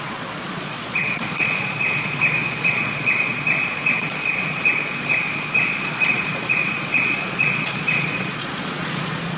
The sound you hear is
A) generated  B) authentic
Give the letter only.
A